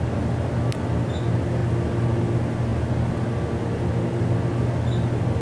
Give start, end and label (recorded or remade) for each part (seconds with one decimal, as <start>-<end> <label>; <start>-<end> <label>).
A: 0.0-5.4 recorded